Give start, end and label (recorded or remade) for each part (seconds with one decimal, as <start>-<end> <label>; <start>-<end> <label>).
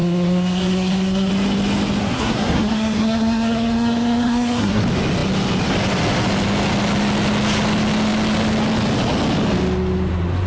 0.0-1.3 remade; 1.3-2.0 recorded; 2.0-4.8 remade; 4.8-10.5 recorded